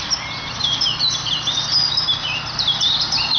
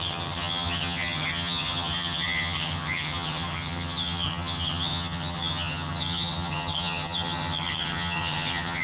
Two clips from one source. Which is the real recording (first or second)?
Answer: first